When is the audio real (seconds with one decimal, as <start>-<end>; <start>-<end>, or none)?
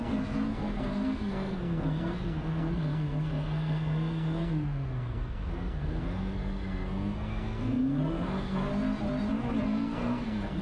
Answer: 8.7-9.6